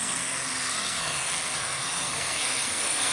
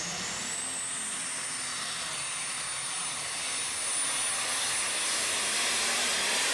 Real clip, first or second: second